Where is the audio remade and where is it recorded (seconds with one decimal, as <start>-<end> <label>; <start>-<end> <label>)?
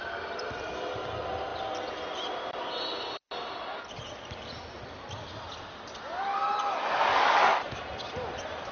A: 0.0-7.1 recorded; 7.1-7.8 remade; 7.8-8.7 recorded